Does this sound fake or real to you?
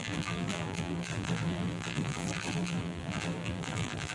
fake